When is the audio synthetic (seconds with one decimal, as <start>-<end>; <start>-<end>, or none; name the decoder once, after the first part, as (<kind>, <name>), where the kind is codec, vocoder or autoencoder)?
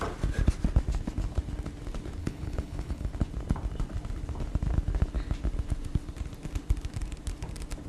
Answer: 2.2-3.1 (codec, HILCodec)